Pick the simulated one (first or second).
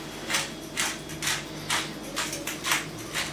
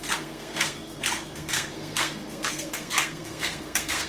second